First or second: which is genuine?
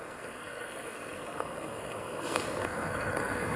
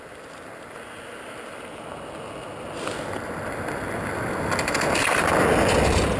second